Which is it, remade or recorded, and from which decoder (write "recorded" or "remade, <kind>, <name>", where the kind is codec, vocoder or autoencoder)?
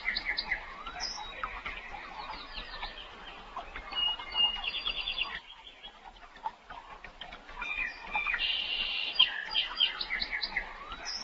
recorded